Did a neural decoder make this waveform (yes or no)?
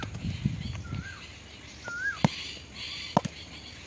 no